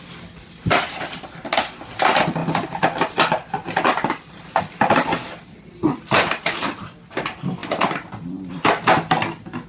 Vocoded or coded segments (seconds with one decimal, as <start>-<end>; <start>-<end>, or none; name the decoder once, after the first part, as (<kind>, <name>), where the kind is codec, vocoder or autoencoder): none